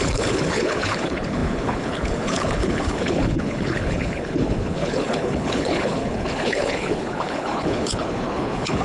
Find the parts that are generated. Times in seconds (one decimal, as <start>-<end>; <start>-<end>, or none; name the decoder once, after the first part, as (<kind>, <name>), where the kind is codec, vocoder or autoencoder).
0.0-8.8 (codec, HILCodec)